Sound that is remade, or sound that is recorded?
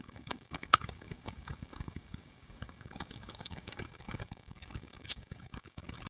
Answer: remade